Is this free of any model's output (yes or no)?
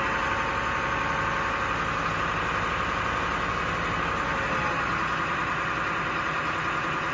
yes